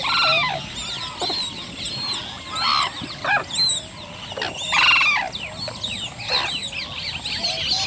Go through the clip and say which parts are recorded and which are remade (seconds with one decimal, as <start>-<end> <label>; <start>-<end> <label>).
0.0-7.9 recorded